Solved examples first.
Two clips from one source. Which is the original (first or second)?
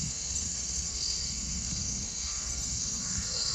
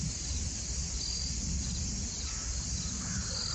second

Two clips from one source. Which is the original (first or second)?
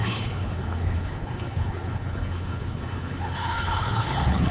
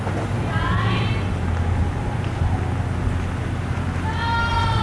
second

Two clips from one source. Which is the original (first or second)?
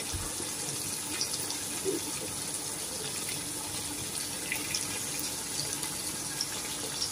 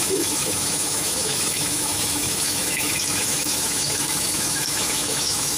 first